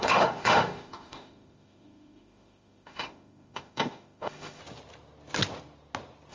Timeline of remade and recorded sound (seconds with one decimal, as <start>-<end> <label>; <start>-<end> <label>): 0.0-4.6 remade; 4.6-6.3 recorded